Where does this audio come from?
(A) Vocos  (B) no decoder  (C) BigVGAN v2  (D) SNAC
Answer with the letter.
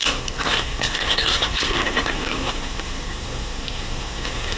D